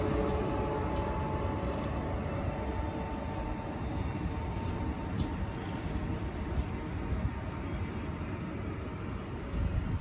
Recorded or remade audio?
recorded